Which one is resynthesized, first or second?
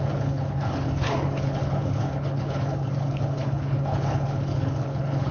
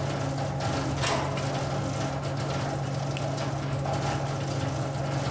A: first